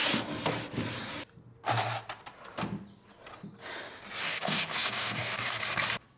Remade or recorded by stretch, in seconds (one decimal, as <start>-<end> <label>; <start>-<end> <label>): 0.0-4.2 recorded; 4.2-5.6 remade; 5.6-6.2 recorded